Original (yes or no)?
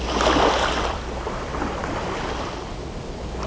yes